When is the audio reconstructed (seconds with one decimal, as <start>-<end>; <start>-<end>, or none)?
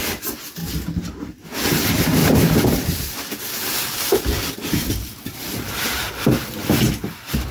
0.6-1.7; 2.2-6.1